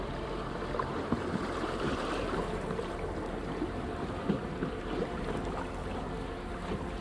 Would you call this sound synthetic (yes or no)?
yes